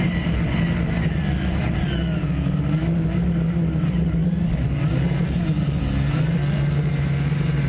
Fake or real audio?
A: real